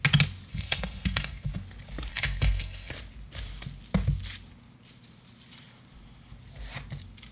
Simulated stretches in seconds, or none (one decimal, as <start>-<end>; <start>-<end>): 0.5-1.5; 2.1-2.9

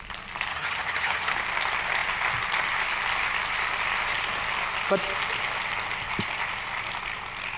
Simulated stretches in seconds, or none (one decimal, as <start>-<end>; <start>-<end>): 0.5-1.3

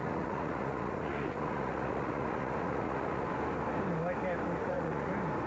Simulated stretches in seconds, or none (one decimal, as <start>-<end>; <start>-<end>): 0.0-3.3; 4.6-5.1